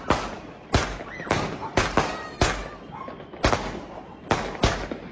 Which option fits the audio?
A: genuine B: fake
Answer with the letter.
A